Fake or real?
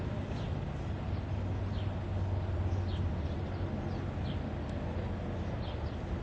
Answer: real